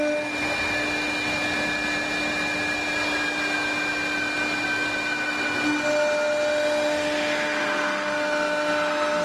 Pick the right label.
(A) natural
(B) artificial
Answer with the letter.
A